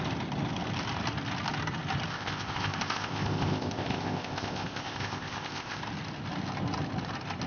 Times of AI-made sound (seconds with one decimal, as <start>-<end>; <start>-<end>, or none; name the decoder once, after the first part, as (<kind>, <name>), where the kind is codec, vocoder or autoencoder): 2.1-5.8 (codec, ZipCodec)